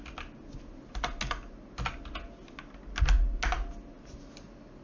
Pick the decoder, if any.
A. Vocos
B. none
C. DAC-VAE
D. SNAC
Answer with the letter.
B